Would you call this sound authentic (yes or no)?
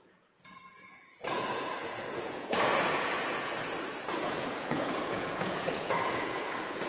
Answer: no